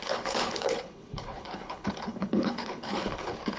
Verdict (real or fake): fake